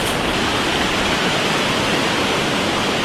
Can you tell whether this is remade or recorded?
recorded